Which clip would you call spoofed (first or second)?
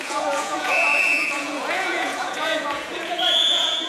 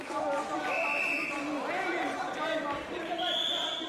first